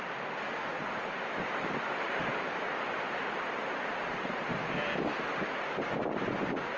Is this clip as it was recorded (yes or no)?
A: yes